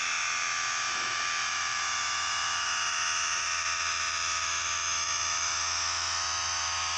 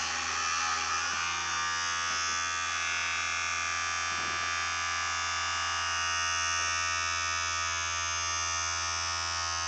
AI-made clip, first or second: first